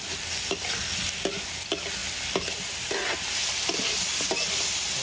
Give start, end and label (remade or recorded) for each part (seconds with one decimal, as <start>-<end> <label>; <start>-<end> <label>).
0.0-5.0 recorded